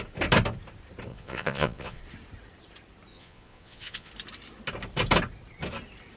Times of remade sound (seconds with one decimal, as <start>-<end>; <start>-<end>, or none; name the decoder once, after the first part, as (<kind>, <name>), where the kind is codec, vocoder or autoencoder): 1.1-2.0 (vocoder, Vocos); 3.1-4.1